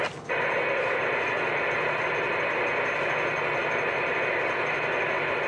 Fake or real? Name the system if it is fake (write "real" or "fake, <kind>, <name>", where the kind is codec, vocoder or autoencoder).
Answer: real